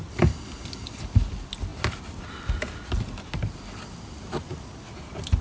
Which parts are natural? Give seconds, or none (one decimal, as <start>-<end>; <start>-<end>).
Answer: 0.0-5.4